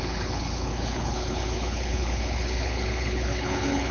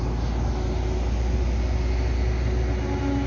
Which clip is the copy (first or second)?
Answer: first